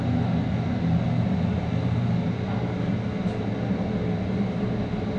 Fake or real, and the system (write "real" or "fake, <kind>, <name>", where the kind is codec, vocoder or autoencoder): real